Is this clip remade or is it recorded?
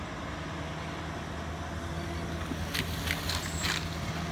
recorded